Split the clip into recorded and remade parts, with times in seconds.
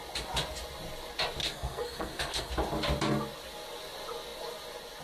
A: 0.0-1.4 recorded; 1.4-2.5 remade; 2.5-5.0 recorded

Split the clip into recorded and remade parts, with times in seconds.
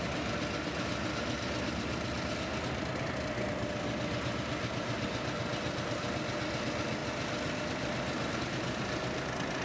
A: 0.0-9.6 recorded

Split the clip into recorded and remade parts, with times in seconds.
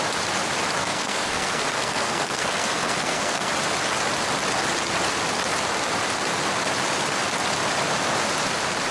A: 0.0-0.8 recorded; 0.8-3.5 remade; 3.5-8.9 recorded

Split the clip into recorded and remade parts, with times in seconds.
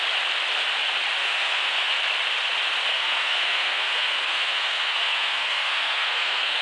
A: 0.0-1.2 recorded; 1.2-1.9 remade; 1.9-2.9 recorded; 2.9-6.6 remade